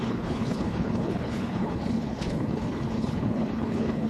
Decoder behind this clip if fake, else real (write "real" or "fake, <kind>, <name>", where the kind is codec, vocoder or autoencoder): fake, codec, HILCodec